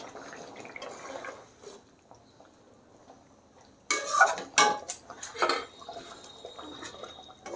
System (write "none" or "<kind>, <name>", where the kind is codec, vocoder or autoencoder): none